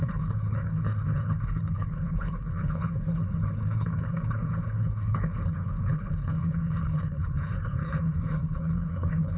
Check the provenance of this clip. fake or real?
fake